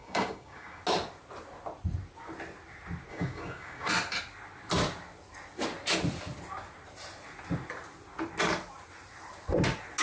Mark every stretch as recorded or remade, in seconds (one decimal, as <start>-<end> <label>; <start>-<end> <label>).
0.0-0.8 remade; 0.8-3.1 recorded; 3.1-3.9 remade; 3.9-10.0 recorded